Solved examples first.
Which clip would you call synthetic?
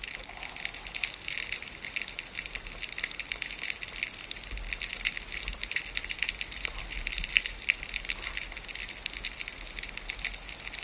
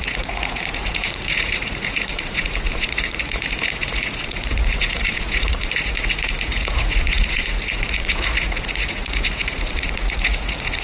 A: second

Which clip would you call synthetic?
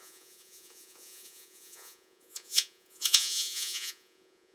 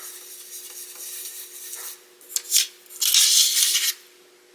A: first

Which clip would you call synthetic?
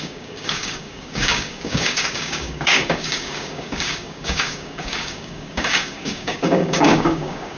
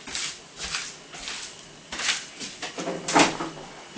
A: first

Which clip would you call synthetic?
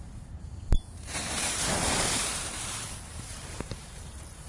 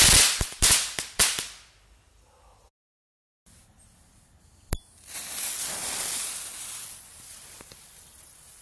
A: first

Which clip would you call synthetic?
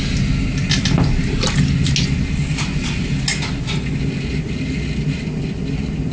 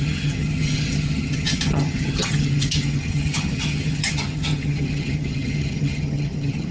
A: second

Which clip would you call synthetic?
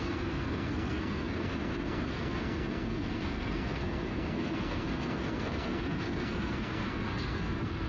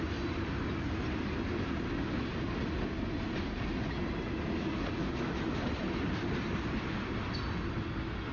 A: first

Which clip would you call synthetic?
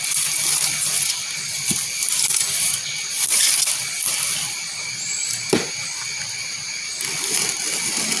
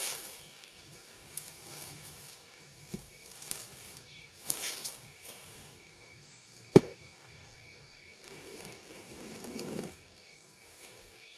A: second